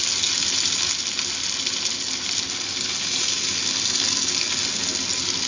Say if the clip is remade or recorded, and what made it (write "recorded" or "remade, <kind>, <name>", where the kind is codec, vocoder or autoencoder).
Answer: recorded